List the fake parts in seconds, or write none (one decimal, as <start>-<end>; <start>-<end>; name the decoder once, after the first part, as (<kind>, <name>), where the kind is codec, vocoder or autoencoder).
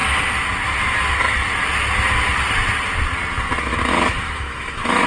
3.7-5.1 (autoencoder, DAC-VAE)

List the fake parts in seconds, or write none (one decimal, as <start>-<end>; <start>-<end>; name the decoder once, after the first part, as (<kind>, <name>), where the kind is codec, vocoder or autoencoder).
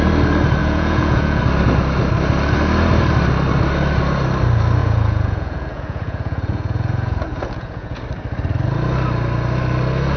0.6-1.4 (vocoder, Vocos); 4.8-8.0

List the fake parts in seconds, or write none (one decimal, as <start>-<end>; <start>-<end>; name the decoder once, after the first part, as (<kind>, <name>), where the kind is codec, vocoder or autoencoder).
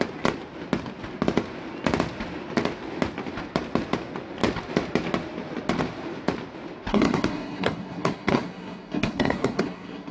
6.9-10.1 (codec, SNAC)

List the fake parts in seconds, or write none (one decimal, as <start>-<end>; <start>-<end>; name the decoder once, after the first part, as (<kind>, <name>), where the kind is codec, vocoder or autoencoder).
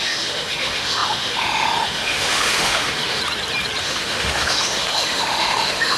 0.0-3.2 (autoencoder, DAC-VAE); 3.8-6.0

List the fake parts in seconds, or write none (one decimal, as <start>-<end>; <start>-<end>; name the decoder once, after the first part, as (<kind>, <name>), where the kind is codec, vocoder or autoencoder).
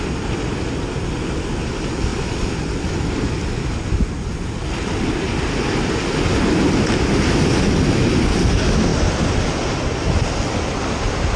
none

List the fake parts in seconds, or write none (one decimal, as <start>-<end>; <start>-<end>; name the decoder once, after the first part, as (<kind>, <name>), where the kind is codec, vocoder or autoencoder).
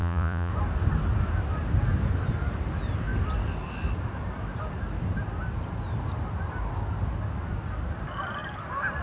0.0-0.5 (vocoder, Vocos)